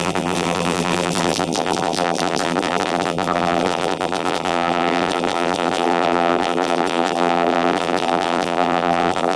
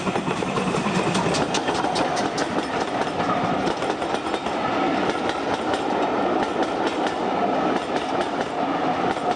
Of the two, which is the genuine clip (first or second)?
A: second